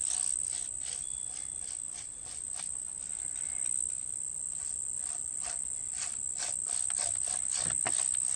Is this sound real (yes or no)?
yes